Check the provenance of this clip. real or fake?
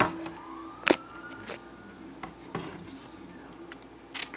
real